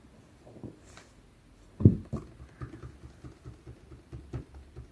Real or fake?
real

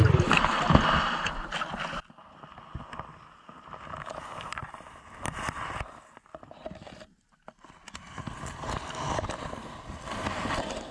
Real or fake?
real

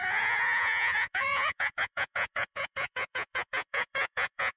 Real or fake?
fake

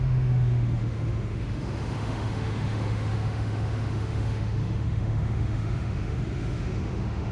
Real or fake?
fake